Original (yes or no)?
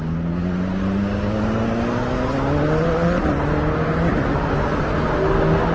yes